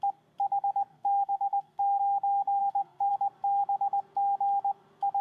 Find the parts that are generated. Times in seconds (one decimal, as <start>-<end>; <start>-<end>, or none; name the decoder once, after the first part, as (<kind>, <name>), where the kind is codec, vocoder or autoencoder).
0.9-2.0 (codec, SNAC); 2.6-3.1